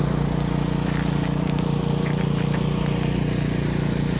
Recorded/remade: recorded